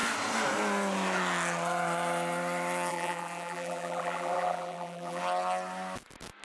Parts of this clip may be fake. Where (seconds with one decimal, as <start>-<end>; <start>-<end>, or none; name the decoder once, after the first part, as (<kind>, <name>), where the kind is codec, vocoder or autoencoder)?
2.9-5.2 (vocoder, BigVGAN v2)